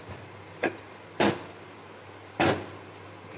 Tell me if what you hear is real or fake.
real